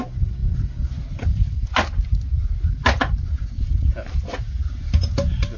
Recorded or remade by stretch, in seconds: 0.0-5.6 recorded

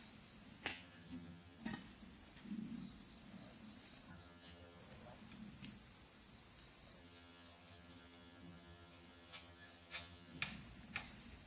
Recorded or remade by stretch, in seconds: 0.0-0.7 recorded; 0.7-1.6 remade; 1.6-4.1 recorded; 4.1-4.8 remade; 4.8-7.0 recorded; 7.0-10.4 remade; 10.4-11.5 recorded

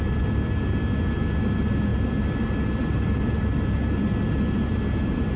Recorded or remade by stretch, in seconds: 0.0-5.4 recorded

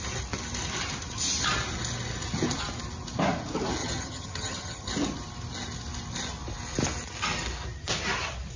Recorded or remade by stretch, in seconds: 0.0-3.8 recorded; 3.8-4.9 remade; 4.9-8.6 recorded

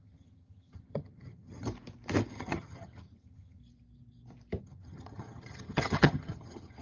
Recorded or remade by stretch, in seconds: 0.0-1.7 remade; 1.7-2.3 recorded; 2.3-3.6 remade; 3.6-4.6 recorded; 4.6-6.8 remade

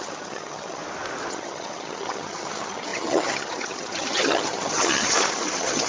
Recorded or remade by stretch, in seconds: 0.0-0.8 remade; 0.8-1.3 recorded; 1.3-5.9 remade

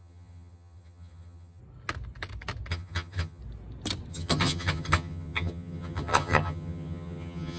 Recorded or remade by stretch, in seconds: 0.0-1.6 remade; 1.6-2.7 recorded; 2.7-3.4 remade; 3.4-4.1 recorded; 4.1-7.6 remade